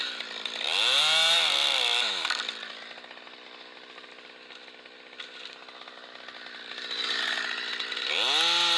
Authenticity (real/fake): real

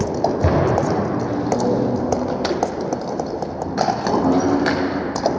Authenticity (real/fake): real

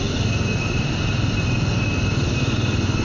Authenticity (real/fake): real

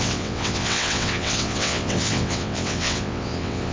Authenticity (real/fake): fake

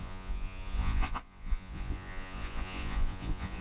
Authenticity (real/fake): fake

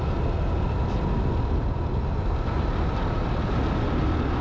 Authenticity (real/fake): real